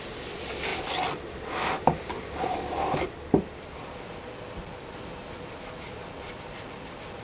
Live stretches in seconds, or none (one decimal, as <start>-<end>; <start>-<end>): 0.0-7.2